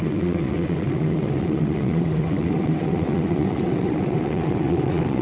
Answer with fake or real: fake